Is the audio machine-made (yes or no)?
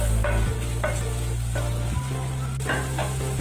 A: no